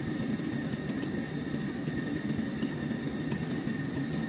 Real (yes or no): yes